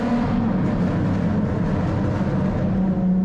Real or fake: real